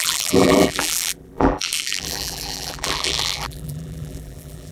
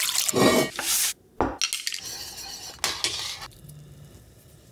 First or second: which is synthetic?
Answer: first